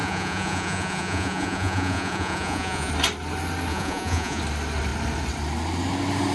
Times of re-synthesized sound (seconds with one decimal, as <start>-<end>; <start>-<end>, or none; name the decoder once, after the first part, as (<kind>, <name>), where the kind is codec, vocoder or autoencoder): 0.0-2.9 (vocoder, Vocos); 3.7-4.4